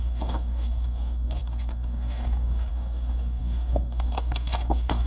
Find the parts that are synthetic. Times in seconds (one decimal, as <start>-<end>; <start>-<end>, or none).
0.0-5.1